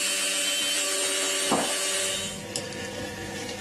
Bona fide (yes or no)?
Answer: yes